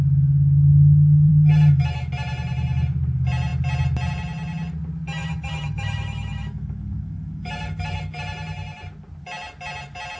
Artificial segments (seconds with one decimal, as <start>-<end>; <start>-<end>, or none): 1.3-2.1; 5.2-8.2